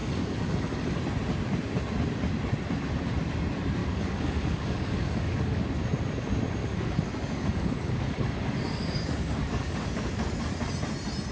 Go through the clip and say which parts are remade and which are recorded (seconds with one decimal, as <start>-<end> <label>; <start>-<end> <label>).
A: 0.0-1.0 remade; 1.0-3.8 recorded; 3.8-5.6 remade; 5.6-6.6 recorded; 6.6-10.4 remade; 10.4-11.3 recorded